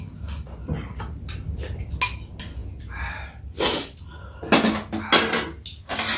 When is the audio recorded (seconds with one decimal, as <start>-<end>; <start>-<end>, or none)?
0.0-6.2